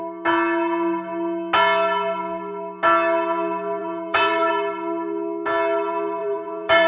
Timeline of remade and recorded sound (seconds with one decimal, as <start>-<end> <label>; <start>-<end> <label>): 0.0-3.8 recorded; 3.8-4.5 remade; 4.5-6.2 recorded; 6.2-6.9 remade